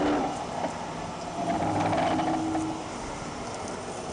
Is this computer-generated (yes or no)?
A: no